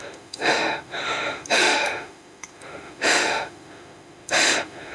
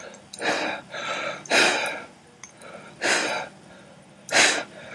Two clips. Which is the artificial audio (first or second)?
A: first